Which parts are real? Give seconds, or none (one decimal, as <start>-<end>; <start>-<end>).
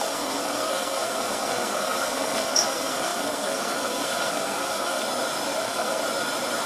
5.0-5.6; 6.0-6.7